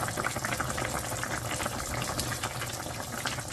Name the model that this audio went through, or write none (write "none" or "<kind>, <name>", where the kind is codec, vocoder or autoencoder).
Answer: none